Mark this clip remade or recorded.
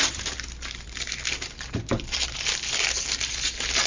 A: remade